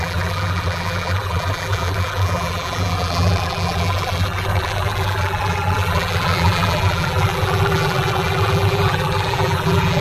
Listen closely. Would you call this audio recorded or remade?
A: remade